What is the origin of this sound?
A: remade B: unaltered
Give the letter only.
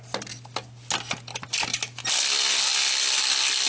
B